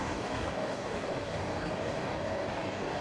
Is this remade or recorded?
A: remade